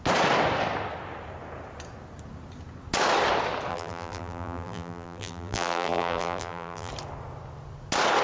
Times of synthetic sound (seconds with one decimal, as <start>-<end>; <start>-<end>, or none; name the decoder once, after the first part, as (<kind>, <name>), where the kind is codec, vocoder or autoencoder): 3.7-6.9 (vocoder, BigVGAN v2)